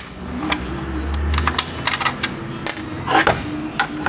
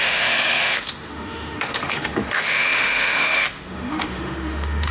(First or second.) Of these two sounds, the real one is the first